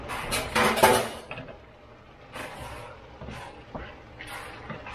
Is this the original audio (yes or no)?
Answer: yes